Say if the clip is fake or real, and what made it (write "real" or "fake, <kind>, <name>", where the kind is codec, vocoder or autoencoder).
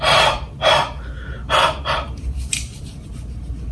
real